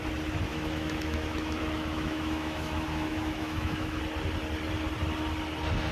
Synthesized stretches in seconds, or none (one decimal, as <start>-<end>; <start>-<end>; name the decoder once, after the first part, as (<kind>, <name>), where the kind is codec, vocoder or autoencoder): 0.5-4.0 (autoencoder, DAC-VAE)